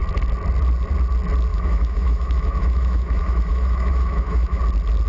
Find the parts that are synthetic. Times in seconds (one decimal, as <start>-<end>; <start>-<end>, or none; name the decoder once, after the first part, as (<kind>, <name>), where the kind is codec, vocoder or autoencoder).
1.5-4.6 (autoencoder, DAC-VAE)